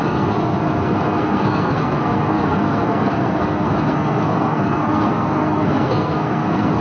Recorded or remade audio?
remade